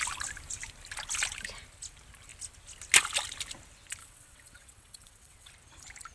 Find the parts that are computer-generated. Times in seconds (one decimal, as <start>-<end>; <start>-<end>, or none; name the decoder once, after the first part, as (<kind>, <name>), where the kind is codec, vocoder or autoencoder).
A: 4.0-5.5 (vocoder, WaveNeXt)